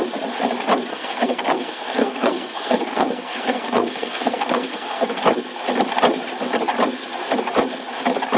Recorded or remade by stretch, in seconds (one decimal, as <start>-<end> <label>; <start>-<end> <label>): 0.0-0.9 recorded; 0.9-5.2 remade; 5.2-8.4 recorded